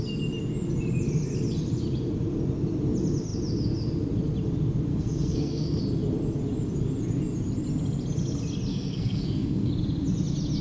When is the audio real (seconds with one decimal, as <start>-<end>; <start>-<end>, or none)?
0.0-4.9; 5.8-8.7; 9.7-10.6